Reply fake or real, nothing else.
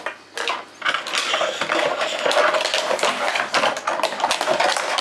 real